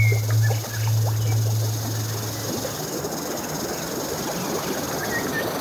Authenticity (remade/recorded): recorded